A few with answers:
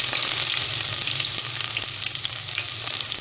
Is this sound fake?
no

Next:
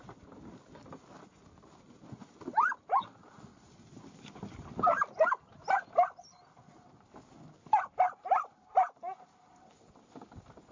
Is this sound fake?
no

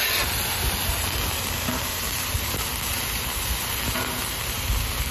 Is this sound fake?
no